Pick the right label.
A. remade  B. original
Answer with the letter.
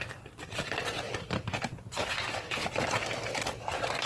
B